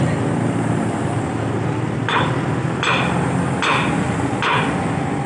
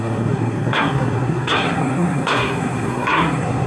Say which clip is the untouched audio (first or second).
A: first